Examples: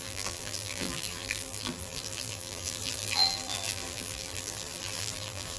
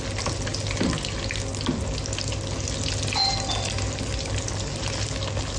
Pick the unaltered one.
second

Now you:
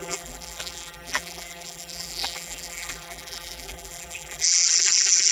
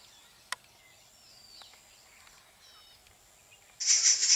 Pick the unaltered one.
second